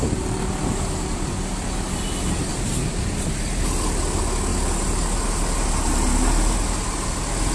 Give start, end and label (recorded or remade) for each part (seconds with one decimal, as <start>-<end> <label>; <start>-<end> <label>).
0.0-2.5 recorded; 2.5-3.3 remade; 3.3-7.5 recorded